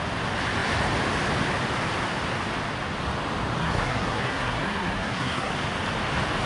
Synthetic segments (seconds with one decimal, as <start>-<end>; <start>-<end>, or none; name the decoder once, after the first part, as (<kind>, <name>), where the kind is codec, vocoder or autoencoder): 3.6-5.5 (codec, SNAC)